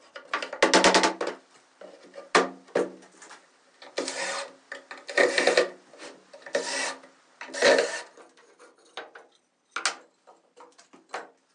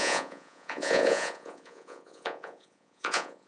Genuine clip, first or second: first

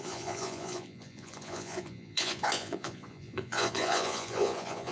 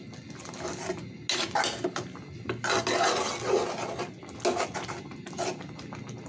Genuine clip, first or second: second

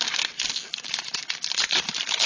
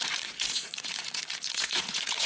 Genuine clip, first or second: first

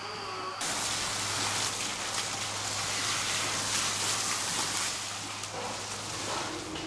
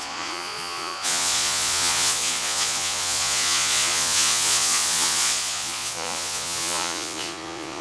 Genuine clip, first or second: first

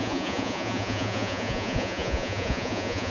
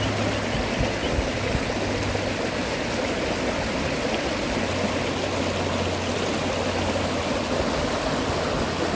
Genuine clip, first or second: second